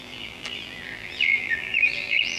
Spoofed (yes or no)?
yes